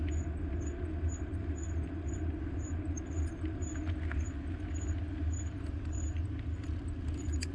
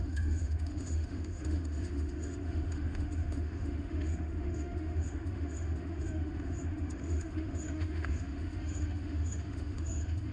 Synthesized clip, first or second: second